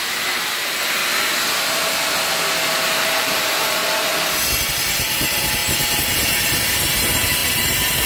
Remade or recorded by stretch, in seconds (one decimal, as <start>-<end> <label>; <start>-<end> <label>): 0.0-1.0 remade; 1.0-2.7 recorded; 2.7-3.8 remade; 3.8-4.7 recorded; 4.7-5.6 remade; 5.6-6.1 recorded; 6.1-8.1 remade